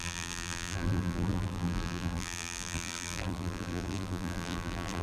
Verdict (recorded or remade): remade